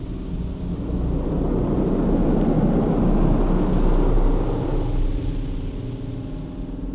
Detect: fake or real real